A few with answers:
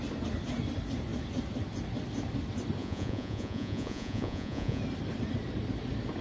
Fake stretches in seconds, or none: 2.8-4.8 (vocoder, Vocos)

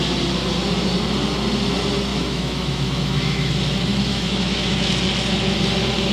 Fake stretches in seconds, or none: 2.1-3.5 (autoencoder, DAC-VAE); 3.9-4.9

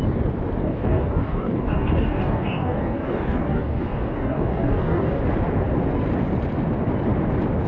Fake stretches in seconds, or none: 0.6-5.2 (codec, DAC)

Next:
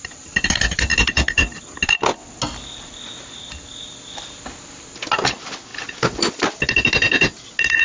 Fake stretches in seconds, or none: none